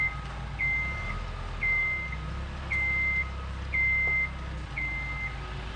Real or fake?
real